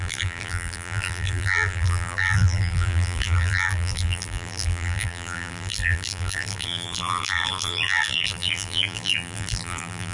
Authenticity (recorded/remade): remade